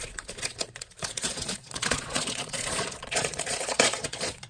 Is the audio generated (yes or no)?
yes